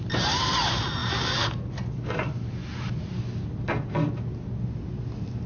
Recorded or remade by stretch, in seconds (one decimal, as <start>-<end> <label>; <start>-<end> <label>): 0.0-5.5 recorded